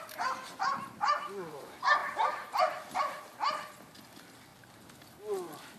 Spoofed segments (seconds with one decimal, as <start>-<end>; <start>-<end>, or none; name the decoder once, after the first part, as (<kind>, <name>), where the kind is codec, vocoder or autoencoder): none